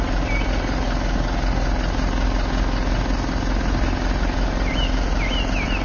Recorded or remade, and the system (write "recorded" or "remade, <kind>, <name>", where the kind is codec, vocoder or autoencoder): recorded